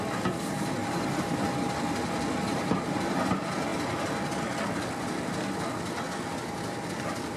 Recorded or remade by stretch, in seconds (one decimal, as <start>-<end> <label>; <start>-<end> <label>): 0.0-0.8 recorded; 0.8-1.5 remade; 1.5-2.5 recorded; 2.5-3.2 remade; 3.2-7.4 recorded